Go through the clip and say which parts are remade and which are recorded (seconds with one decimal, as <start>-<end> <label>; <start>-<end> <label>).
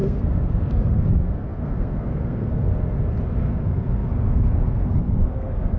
0.0-2.7 remade; 2.7-3.4 recorded; 3.4-5.8 remade